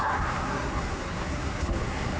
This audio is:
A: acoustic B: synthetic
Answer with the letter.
B